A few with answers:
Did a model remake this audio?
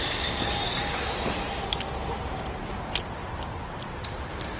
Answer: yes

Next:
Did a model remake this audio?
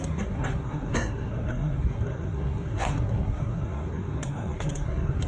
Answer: yes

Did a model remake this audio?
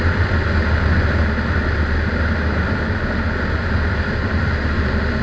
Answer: no